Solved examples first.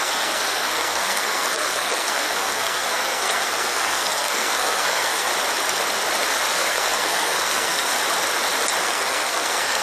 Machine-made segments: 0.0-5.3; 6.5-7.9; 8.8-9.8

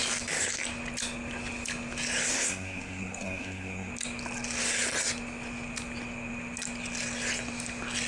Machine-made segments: 2.3-3.9

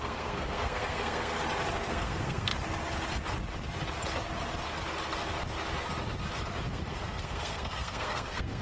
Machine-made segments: 0.0-1.3; 1.9-2.5; 6.7-8.6

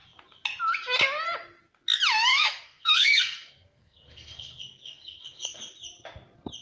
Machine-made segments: 2.3-5.6

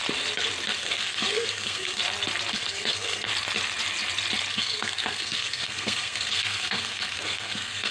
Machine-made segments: 0.8-2.0; 2.5-3.3; 4.5-7.9

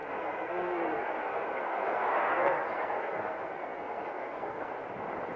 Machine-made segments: 0.0-4.7

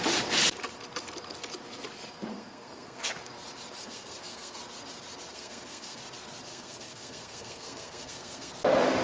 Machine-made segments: 2.3-3.1; 3.8-4.6; 5.3-6.0; 6.5-8.5

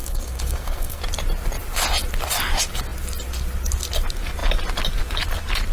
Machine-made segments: 0.0-1.0